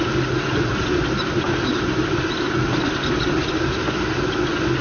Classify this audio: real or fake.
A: real